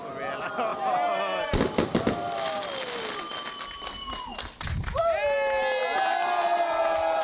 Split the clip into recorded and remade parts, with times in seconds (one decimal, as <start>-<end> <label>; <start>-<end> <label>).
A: 0.0-7.2 recorded